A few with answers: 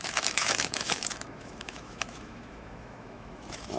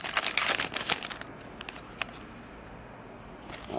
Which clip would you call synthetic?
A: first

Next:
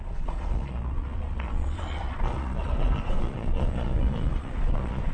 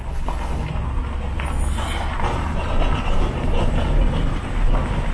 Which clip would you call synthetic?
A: first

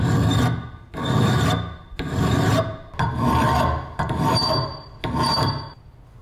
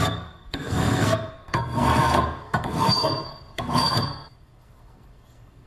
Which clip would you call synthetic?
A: second